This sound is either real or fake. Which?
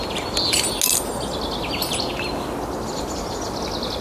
real